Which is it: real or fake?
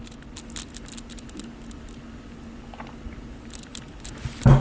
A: real